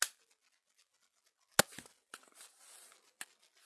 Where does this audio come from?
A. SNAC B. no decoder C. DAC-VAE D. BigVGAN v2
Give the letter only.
B